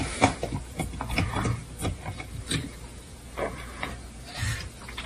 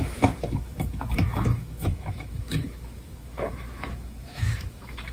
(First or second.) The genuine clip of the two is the first